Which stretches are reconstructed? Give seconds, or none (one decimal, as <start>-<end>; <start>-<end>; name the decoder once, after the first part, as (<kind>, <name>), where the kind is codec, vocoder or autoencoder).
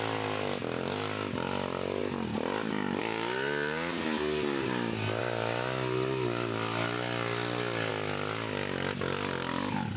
none